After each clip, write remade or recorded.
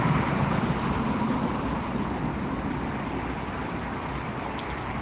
recorded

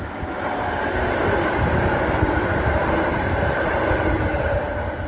recorded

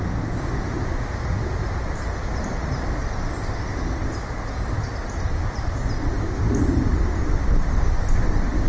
recorded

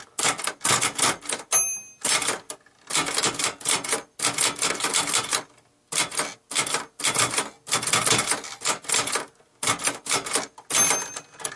recorded